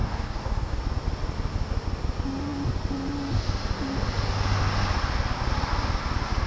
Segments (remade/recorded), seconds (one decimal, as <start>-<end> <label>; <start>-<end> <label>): 0.0-0.8 remade; 0.8-6.5 recorded